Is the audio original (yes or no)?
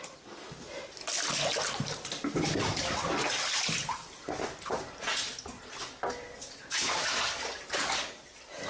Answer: yes